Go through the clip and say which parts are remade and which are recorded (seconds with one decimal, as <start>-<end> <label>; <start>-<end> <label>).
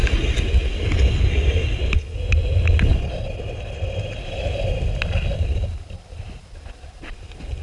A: 0.0-7.6 recorded